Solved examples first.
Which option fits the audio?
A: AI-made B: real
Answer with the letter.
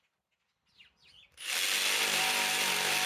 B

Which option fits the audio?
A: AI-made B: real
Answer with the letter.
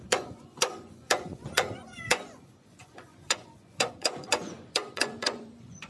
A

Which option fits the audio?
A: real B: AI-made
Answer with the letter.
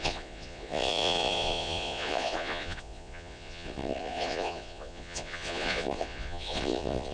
B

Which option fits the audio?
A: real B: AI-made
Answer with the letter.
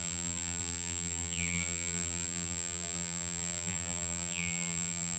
B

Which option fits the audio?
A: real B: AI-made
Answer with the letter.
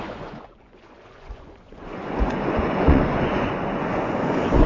B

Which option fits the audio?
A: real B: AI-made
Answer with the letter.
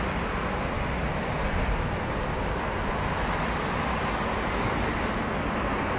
A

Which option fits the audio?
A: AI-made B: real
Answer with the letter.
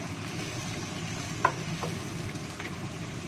B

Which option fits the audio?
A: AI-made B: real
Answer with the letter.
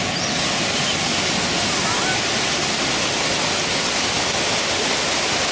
B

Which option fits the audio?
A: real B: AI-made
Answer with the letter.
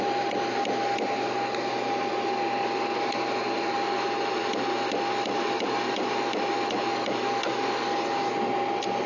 A